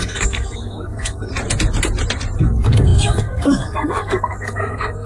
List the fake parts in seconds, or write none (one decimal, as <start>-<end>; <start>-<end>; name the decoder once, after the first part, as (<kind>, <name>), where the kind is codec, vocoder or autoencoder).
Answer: 0.0-1.3 (codec, SNAC); 2.4-5.1